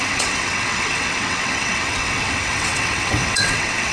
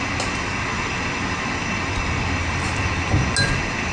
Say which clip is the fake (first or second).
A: first